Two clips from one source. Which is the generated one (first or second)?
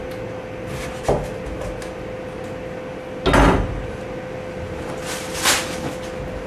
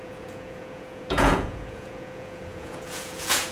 second